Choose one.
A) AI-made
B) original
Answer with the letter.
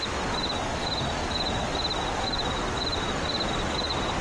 B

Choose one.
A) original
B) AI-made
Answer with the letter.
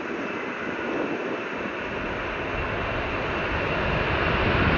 A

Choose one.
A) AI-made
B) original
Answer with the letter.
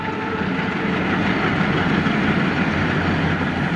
B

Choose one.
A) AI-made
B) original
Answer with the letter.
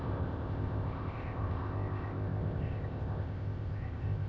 A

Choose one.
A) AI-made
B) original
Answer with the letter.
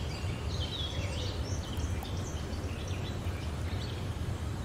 B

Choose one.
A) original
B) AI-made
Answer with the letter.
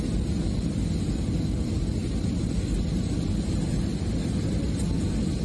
A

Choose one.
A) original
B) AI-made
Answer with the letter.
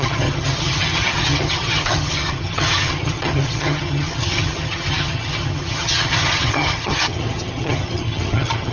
B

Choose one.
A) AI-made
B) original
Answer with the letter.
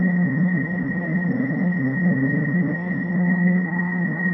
A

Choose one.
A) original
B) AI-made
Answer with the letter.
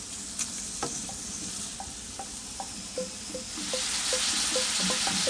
A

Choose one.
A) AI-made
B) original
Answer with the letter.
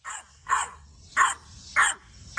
B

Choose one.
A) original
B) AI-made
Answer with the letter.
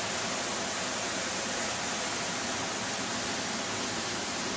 A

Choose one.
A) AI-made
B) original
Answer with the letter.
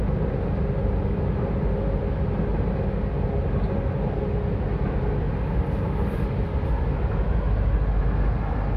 B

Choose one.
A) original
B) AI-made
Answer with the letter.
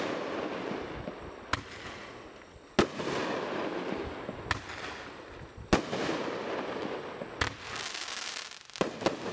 A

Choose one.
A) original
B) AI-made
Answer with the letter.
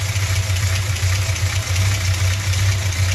A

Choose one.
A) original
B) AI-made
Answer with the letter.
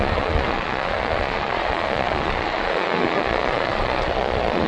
B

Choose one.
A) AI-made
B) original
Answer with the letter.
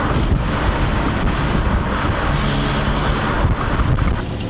B